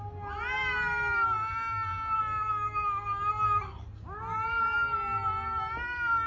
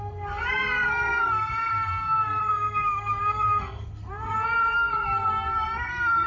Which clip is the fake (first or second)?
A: second